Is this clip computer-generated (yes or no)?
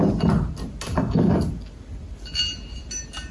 no